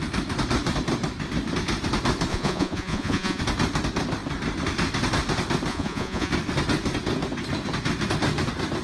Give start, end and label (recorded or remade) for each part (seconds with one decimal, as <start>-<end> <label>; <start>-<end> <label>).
0.0-2.3 recorded; 2.3-3.4 remade; 3.4-5.7 recorded; 5.7-6.3 remade; 6.3-8.8 recorded